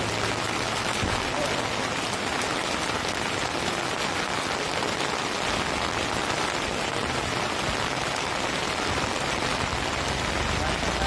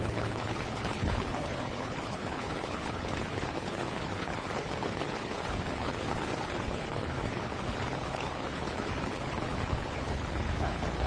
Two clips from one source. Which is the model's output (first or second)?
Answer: second